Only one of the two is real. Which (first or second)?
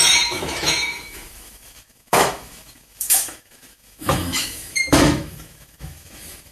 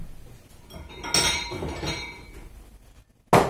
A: second